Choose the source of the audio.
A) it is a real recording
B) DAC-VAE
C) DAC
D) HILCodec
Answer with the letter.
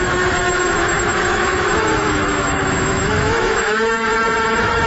B